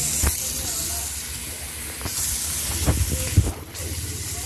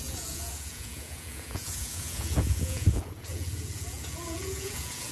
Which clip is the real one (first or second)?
first